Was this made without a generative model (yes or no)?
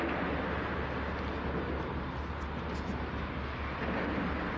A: yes